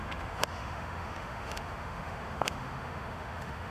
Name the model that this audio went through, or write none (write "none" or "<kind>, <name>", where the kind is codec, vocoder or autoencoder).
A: autoencoder, DAC-VAE